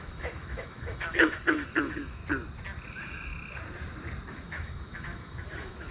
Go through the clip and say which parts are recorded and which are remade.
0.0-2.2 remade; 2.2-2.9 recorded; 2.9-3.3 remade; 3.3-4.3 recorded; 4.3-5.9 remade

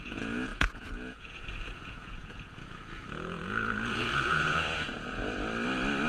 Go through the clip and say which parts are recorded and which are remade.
0.0-5.2 remade; 5.2-6.1 recorded

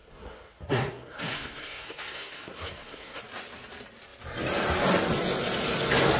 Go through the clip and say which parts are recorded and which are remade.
0.0-3.2 remade; 3.2-6.2 recorded

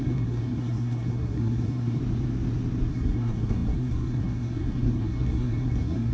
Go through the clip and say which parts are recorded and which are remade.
0.0-2.0 remade; 2.0-2.9 recorded; 2.9-6.1 remade

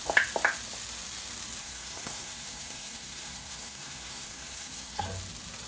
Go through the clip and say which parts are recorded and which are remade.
0.0-1.6 recorded; 1.6-5.0 remade; 5.0-5.7 recorded

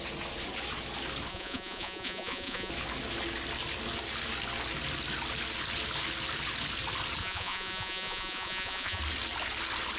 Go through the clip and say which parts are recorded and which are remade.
0.0-1.3 recorded; 1.3-2.7 remade; 2.7-7.2 recorded; 7.2-9.0 remade; 9.0-10.0 recorded

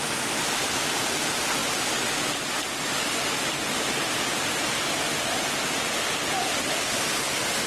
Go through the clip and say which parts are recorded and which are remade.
0.0-7.7 recorded